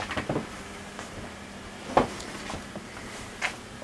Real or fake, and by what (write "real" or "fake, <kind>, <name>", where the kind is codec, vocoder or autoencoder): real